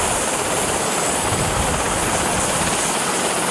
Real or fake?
real